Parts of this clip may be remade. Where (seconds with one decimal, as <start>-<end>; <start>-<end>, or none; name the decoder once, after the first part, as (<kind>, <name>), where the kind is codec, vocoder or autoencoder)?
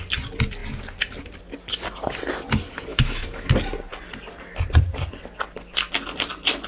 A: 2.9-3.5 (autoencoder, DAC-VAE)